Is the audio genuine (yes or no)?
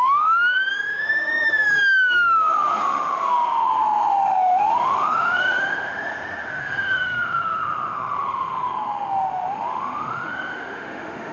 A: no